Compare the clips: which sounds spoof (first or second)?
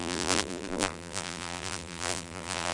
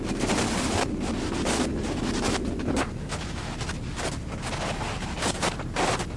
first